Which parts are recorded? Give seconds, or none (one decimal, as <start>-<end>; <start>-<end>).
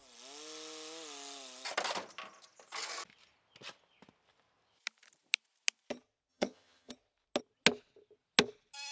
0.0-6.3; 6.9-8.9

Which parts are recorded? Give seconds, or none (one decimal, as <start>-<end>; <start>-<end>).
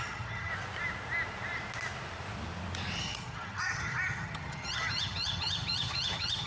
0.5-3.0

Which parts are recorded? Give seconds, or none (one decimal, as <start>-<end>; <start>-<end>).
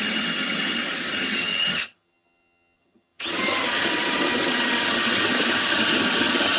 none